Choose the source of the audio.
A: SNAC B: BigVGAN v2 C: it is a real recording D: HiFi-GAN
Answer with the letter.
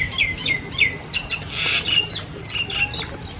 C